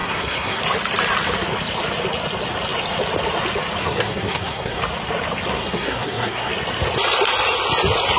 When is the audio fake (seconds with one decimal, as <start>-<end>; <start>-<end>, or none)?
0.0-0.6; 3.8-4.8; 5.5-6.5